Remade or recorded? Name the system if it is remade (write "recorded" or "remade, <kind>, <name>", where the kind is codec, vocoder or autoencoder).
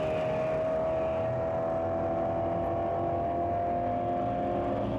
recorded